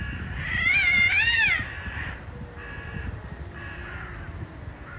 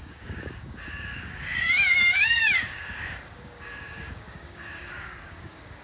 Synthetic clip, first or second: second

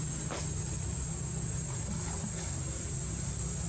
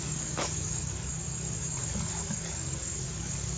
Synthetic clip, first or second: second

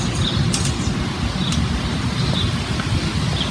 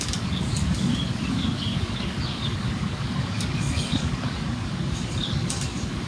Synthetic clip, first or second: second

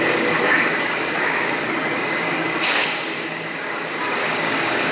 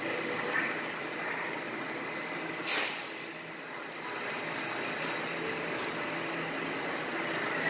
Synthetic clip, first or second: first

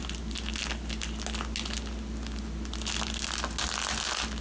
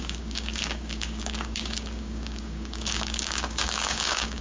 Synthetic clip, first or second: second